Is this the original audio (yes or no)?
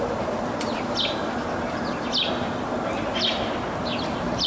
yes